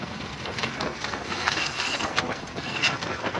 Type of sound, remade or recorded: remade